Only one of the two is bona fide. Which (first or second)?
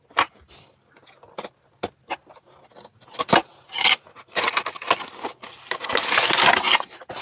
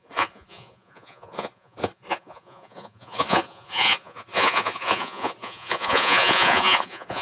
first